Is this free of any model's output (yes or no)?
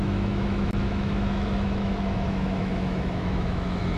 no